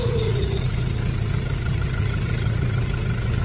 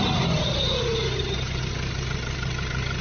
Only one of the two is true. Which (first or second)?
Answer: second